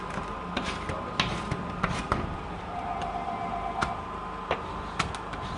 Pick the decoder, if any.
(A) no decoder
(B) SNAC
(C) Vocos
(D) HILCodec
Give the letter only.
A